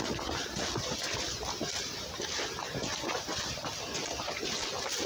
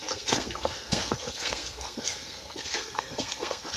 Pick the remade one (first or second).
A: second